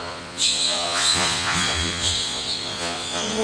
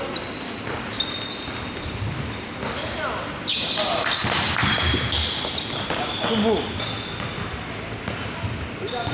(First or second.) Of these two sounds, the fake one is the first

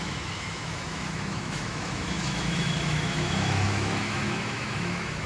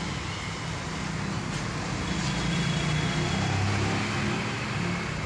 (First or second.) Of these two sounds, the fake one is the first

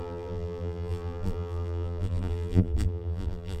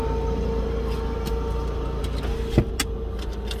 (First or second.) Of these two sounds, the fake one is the first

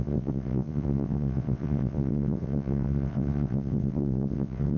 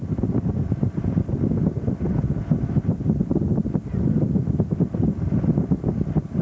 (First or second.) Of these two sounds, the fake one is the first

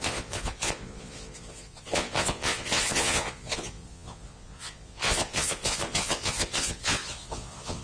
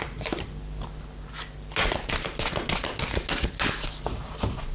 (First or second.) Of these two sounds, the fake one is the first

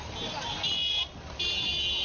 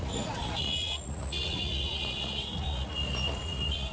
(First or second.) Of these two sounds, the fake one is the second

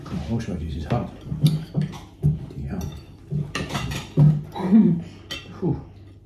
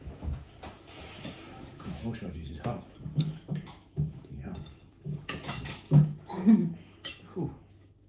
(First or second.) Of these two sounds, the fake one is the second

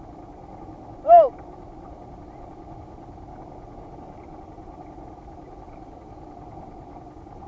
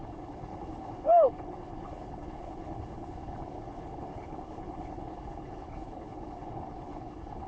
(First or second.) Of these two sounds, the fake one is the second